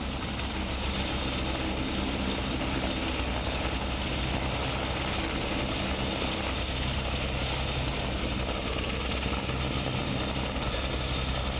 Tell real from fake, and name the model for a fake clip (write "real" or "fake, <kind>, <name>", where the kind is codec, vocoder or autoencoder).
real